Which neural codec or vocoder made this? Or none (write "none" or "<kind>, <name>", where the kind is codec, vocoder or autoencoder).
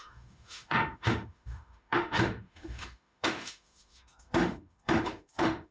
autoencoder, DAC-VAE